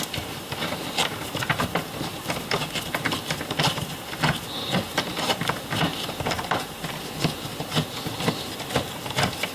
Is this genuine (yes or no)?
yes